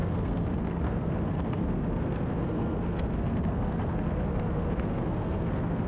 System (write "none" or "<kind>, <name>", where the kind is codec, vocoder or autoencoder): codec, SNAC